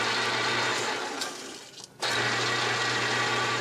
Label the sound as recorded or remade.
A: recorded